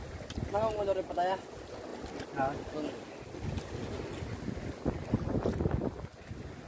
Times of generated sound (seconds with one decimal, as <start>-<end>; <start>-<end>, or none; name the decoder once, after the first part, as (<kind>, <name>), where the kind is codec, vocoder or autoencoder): none